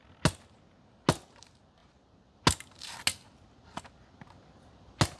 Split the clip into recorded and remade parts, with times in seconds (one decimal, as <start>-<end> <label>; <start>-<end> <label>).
0.0-5.2 recorded